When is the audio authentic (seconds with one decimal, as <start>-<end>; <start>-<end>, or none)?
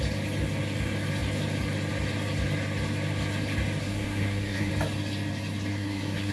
0.0-3.8; 4.7-5.7